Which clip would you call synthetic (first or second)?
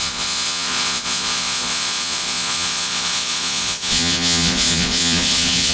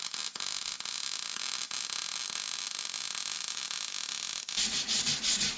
first